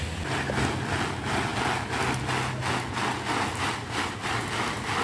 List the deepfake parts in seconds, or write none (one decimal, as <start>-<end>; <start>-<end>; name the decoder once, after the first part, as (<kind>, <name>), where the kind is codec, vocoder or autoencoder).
none